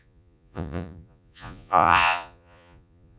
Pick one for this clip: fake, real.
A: fake